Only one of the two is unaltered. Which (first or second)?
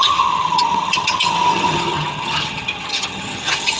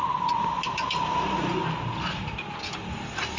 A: second